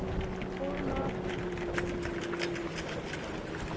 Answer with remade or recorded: recorded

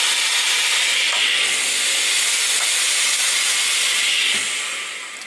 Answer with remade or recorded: recorded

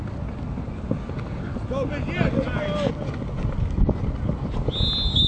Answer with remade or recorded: recorded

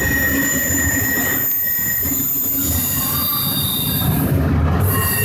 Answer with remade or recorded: recorded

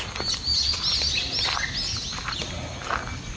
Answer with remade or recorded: recorded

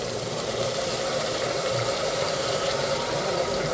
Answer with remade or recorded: remade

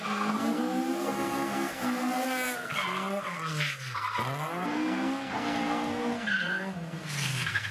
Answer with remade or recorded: remade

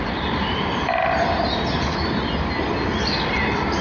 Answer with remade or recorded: recorded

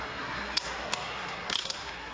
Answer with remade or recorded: remade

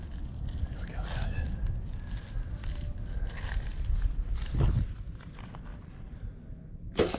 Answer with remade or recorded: recorded